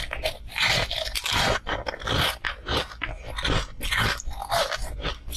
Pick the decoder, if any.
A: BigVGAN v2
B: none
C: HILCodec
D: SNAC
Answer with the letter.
B